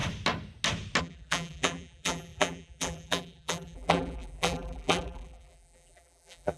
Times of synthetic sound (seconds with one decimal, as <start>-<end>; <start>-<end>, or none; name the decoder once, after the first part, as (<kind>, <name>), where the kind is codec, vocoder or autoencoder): 1.0-6.6 (vocoder, BigVGAN v2)